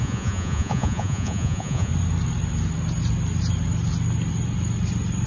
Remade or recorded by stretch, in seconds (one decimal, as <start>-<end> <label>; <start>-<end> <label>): 0.0-1.9 remade; 1.9-5.3 recorded